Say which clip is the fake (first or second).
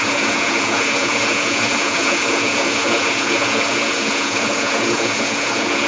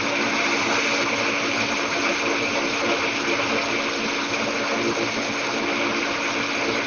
first